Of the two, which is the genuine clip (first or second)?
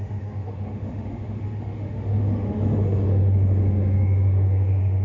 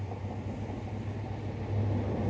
second